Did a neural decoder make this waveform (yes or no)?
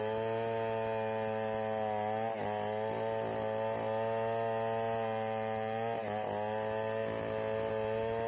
no